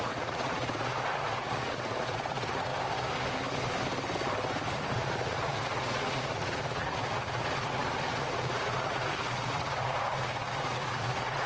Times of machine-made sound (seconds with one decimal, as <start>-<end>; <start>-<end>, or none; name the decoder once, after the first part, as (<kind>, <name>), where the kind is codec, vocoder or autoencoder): 0.0-2.7 (vocoder, Vocos); 4.7-11.5